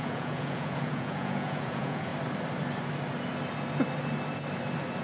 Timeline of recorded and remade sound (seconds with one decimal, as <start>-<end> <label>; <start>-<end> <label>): 0.0-2.1 remade; 2.1-5.0 recorded

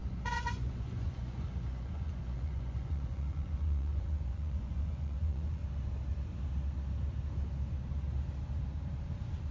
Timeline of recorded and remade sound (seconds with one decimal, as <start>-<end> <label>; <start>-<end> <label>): 0.0-5.6 remade; 5.6-9.5 recorded

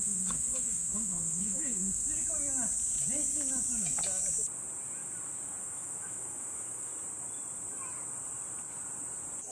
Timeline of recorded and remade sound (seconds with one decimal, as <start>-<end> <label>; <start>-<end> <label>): 0.0-2.0 remade; 2.0-5.6 recorded; 5.6-6.9 remade; 6.9-9.5 recorded

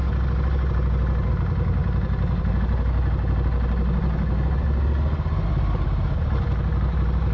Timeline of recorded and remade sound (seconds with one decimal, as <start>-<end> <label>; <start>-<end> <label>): 0.0-7.3 recorded

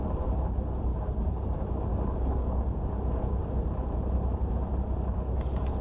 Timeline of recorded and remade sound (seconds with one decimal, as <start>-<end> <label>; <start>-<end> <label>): 0.0-0.9 recorded; 0.9-1.4 remade; 1.4-1.9 recorded; 1.9-3.4 remade; 3.4-5.8 recorded

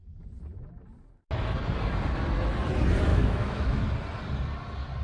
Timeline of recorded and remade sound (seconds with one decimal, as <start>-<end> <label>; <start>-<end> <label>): 0.0-3.1 recorded; 3.1-3.8 remade; 3.8-5.0 recorded

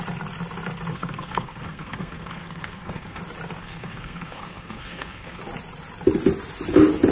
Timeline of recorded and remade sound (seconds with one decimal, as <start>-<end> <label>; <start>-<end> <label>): 0.0-0.9 recorded; 0.9-3.2 remade; 3.2-3.6 recorded; 3.6-5.4 remade; 5.4-7.1 recorded

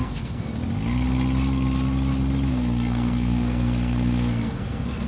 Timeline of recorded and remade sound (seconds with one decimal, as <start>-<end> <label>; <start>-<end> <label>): 0.0-0.5 remade; 0.5-2.5 recorded; 2.5-5.1 remade